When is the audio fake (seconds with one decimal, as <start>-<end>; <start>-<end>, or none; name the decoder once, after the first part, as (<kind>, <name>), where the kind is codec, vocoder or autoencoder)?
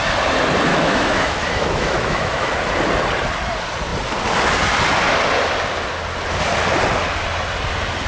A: 0.7-2.5 (autoencoder, DAC-VAE)